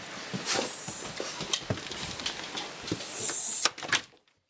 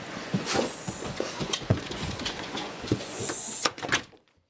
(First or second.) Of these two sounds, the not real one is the second